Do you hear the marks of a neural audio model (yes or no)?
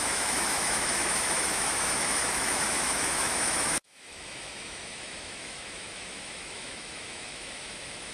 yes